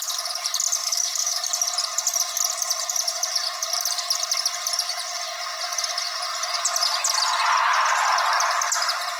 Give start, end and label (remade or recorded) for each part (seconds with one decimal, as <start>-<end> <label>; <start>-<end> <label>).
0.0-0.8 recorded; 0.8-1.4 remade; 1.4-9.2 recorded